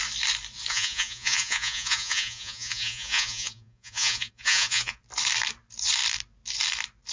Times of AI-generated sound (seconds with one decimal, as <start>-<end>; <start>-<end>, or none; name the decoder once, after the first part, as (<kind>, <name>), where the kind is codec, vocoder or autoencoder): 0.7-5.0 (vocoder, Vocos)